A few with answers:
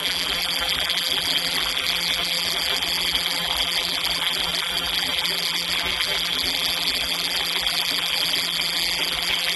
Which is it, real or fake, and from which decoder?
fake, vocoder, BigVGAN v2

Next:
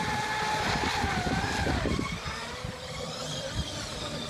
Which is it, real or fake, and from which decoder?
fake, vocoder, BigVGAN v2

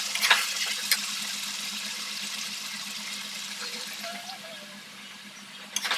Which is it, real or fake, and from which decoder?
fake, vocoder, BigVGAN v2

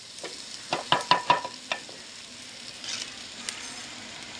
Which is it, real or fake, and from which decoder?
fake, vocoder, BigVGAN v2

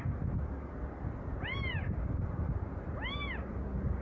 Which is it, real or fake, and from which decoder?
real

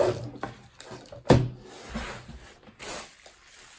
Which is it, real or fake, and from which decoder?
real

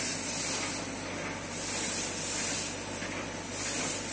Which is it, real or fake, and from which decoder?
real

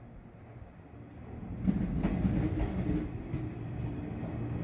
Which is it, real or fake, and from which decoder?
real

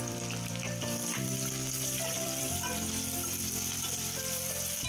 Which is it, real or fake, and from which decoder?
fake, vocoder, BigVGAN v2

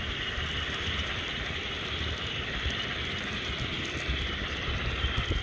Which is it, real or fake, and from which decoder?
fake, vocoder, BigVGAN v2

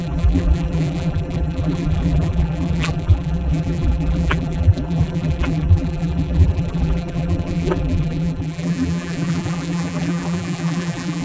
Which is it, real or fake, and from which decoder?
fake, vocoder, BigVGAN v2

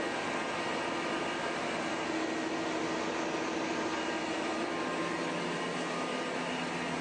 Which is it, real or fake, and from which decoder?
real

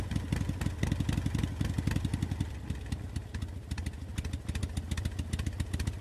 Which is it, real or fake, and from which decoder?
real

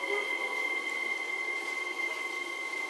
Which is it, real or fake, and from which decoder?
real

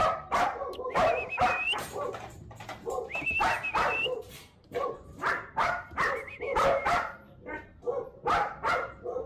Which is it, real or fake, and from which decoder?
fake, vocoder, BigVGAN v2